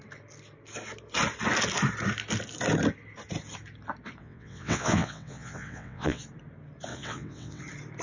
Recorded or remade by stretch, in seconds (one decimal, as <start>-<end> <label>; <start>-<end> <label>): 0.0-4.2 recorded; 4.2-6.2 remade; 6.2-6.9 recorded; 6.9-7.6 remade; 7.6-8.0 recorded